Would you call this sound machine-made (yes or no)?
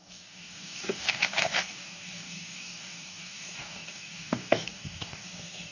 yes